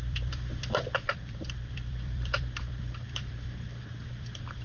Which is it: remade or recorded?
remade